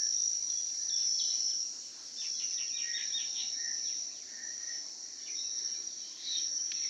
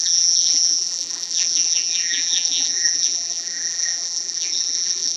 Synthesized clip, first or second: second